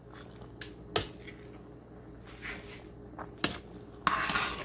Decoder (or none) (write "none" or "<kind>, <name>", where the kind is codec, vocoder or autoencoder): none